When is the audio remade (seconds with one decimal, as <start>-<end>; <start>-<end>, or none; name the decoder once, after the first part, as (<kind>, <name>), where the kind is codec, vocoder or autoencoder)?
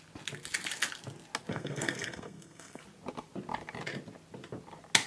1.5-2.8 (codec, SNAC)